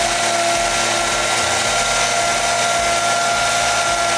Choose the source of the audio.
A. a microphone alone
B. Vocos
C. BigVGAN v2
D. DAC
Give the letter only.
A